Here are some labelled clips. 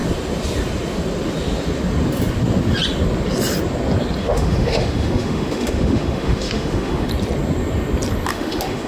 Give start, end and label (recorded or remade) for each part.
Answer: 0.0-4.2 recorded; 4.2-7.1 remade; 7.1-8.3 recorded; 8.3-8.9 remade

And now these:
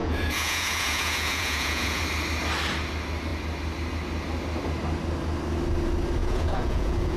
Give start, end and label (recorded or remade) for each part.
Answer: 0.0-2.0 remade; 2.0-6.2 recorded; 6.2-7.2 remade

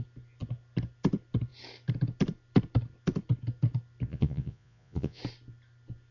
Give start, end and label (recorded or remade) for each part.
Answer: 0.0-4.1 recorded; 4.1-5.2 remade; 5.2-6.1 recorded

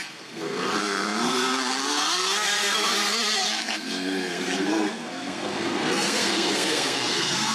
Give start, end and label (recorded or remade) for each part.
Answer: 0.0-7.5 remade